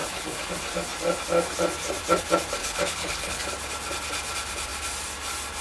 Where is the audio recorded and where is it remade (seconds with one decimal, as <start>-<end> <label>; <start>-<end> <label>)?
0.0-0.5 remade; 0.5-2.6 recorded; 2.6-3.4 remade; 3.4-5.6 recorded